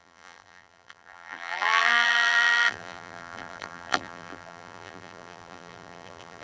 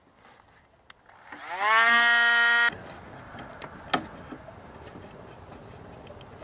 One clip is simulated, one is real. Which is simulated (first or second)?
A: first